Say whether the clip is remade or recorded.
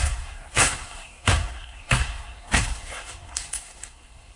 remade